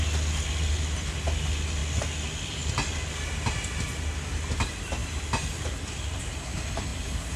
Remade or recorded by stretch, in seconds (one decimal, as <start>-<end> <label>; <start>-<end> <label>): 0.0-7.4 recorded